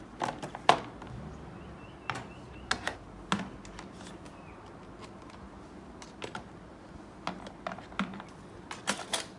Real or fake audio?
real